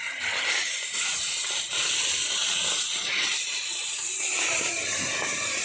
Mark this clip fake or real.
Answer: fake